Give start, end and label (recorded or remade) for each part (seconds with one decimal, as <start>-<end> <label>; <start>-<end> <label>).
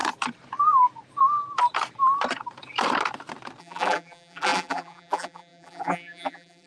0.0-3.6 recorded; 3.6-6.7 remade